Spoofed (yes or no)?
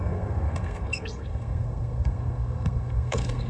yes